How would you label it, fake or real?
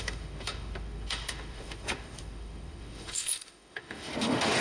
fake